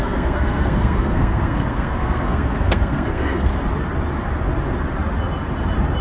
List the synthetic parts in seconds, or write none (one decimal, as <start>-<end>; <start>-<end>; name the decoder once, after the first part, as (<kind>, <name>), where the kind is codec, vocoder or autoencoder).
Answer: 0.0-3.5 (codec, SNAC)